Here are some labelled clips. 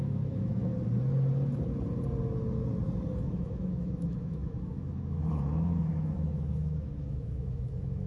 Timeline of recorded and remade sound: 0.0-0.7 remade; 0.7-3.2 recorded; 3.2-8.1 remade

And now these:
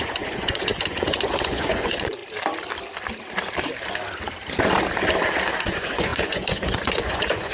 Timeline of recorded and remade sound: 0.0-2.2 remade; 2.2-5.6 recorded; 5.6-7.5 remade

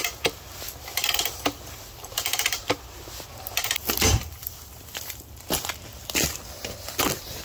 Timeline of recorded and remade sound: 0.0-7.4 recorded

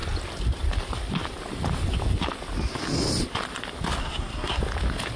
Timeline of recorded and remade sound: 0.0-4.0 recorded; 4.0-4.6 remade; 4.6-5.2 recorded

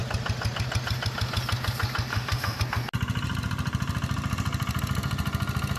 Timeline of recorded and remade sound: 0.0-2.1 recorded; 2.1-2.6 remade; 2.6-5.8 recorded